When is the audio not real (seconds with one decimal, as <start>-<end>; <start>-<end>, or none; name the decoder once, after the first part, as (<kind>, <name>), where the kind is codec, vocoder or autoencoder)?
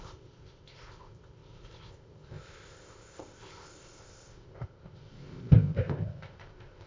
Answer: 0.0-6.9 (codec, ZipCodec)